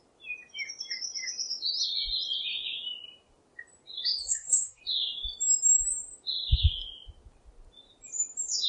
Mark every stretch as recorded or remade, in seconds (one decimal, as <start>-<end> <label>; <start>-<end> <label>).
0.0-4.2 recorded; 4.2-4.8 remade; 4.8-8.7 recorded